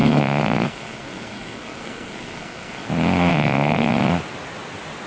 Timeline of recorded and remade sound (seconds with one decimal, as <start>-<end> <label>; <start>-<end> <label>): 0.0-2.9 remade; 2.9-3.3 recorded; 3.3-3.9 remade; 3.9-5.1 recorded